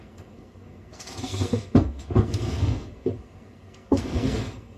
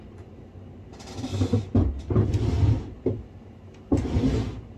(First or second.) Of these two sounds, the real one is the second